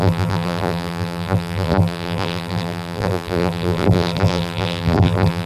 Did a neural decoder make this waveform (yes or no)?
yes